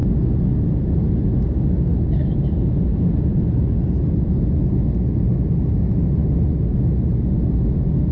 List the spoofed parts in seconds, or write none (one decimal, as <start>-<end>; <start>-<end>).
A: none